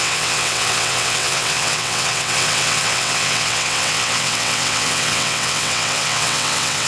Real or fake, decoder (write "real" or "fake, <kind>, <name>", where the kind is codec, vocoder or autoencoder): fake, vocoder, WaveNeXt